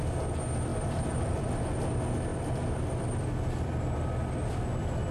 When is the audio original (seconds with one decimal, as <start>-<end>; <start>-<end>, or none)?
0.0-0.7; 1.5-2.3; 4.3-5.1